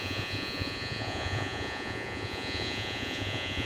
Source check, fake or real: fake